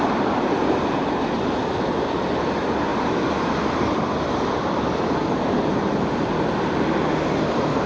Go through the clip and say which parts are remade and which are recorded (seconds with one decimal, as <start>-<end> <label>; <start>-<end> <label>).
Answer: 0.0-7.9 recorded